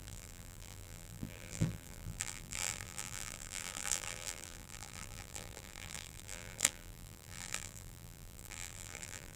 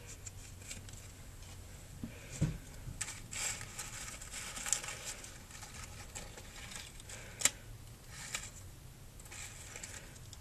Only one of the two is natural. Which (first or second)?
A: second